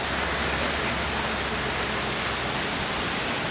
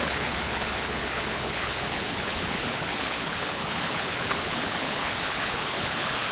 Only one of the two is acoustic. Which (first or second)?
first